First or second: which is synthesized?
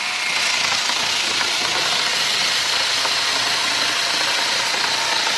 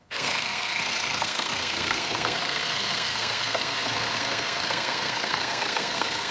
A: second